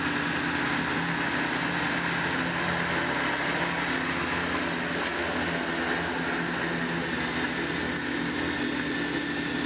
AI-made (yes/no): no